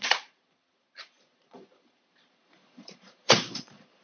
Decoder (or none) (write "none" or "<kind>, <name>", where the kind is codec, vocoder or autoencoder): vocoder, Vocos